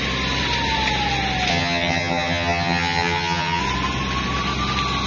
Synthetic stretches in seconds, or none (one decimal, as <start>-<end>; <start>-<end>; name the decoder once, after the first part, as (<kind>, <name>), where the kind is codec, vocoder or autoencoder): 1.5-3.6 (vocoder, HiFi-GAN)